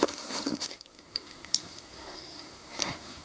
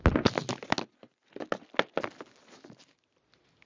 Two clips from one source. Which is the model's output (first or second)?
first